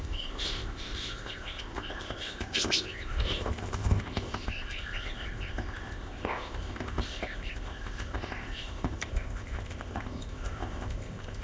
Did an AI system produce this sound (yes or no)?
yes